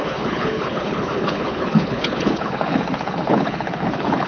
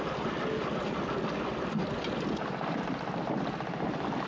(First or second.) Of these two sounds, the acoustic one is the second